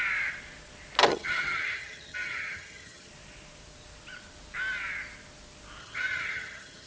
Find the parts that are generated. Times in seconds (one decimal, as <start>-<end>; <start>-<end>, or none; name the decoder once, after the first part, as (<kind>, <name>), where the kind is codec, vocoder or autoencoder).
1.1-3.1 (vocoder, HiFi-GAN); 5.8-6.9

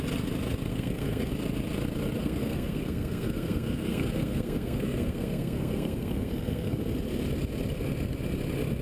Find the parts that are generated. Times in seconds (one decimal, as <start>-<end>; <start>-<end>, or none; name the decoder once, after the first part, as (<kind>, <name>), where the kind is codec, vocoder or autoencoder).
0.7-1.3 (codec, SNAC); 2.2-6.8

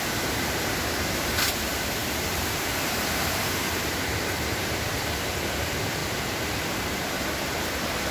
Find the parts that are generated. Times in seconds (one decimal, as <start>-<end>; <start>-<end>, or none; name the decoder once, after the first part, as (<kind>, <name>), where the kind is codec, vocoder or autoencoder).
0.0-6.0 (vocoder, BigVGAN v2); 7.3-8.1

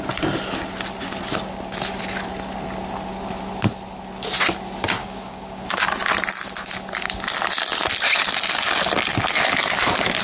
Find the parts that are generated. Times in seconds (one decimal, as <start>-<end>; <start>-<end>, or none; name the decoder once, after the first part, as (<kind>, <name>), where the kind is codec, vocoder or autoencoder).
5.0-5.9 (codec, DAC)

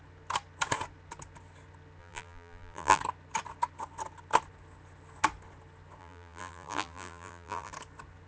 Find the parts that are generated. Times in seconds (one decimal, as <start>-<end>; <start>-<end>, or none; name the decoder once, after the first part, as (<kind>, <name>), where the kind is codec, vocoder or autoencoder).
2.0-3.0 (vocoder, BigVGAN v2); 6.0-7.7

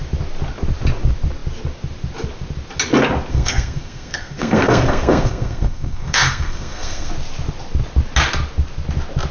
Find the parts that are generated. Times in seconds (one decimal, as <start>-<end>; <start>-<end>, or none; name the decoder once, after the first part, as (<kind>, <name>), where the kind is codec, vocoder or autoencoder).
3.3-7.1 (codec, SNAC)

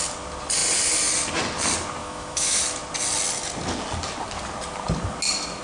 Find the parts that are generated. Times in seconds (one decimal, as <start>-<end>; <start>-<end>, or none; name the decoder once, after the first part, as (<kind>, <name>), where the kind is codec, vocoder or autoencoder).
2.0-2.6 (autoencoder, DAC-VAE)